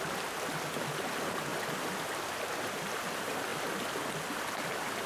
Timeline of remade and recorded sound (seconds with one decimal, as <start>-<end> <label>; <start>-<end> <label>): 0.0-5.1 recorded